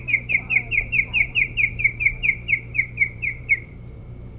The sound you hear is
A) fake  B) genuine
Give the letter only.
A